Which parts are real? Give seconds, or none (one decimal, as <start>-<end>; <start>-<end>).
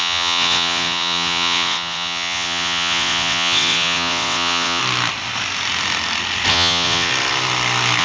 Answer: 4.8-6.5; 7.1-8.0